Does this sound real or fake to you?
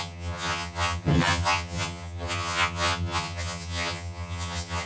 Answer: fake